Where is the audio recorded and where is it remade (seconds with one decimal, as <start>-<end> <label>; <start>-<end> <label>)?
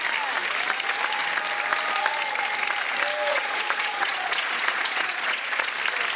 0.0-3.3 recorded; 3.3-5.7 remade; 5.7-6.2 recorded